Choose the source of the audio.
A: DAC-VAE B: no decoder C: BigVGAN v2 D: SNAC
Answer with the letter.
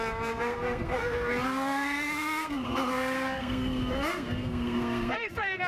D